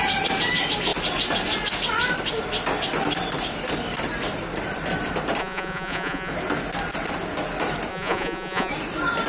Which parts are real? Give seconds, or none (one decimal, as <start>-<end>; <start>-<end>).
0.0-5.4; 6.3-7.9; 8.7-9.3